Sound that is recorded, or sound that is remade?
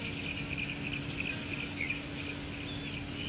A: recorded